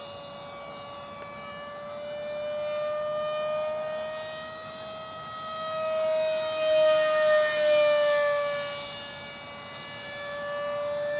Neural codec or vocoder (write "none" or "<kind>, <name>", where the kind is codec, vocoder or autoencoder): none